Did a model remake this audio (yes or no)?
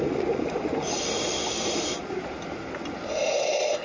no